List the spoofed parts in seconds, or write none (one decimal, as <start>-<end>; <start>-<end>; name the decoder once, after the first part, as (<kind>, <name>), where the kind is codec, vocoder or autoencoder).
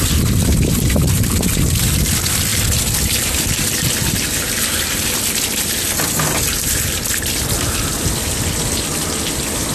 none